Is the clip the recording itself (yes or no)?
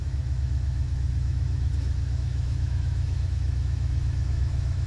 no